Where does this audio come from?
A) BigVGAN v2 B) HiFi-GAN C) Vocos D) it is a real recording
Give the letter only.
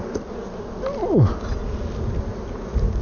D